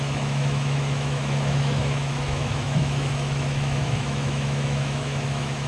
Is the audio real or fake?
fake